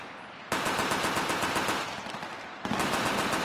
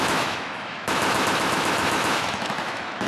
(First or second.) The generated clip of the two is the second